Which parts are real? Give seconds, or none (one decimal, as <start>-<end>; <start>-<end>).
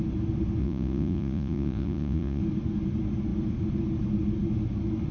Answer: 0.0-0.6; 2.4-5.1